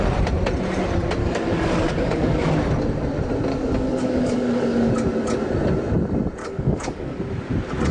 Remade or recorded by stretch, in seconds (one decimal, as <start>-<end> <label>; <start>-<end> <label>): 0.0-1.2 recorded; 1.2-2.5 remade; 2.5-3.5 recorded; 3.5-4.9 remade; 4.9-6.4 recorded; 6.4-7.2 remade; 7.2-7.9 recorded